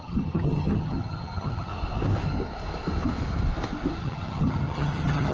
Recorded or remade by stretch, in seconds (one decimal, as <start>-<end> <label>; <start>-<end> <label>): 0.0-1.7 remade; 1.7-4.0 recorded; 4.0-5.3 remade